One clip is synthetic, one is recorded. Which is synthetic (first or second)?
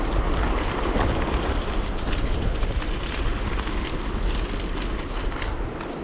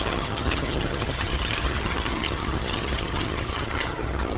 second